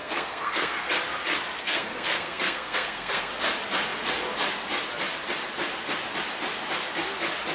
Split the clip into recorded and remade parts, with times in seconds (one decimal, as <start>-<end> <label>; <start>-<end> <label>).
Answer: 0.0-0.9 remade; 0.9-1.6 recorded; 1.6-3.3 remade; 3.3-7.5 recorded